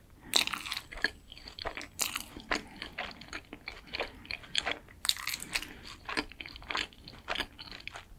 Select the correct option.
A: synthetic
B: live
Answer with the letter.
B